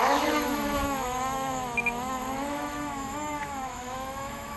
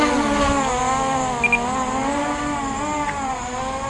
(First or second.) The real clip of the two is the second